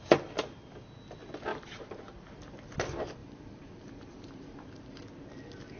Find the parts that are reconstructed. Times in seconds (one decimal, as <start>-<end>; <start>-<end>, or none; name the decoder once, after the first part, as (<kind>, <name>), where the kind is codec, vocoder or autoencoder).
1.5-2.2 (vocoder, BigVGAN v2); 3.2-4.6